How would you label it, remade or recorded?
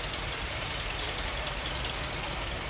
recorded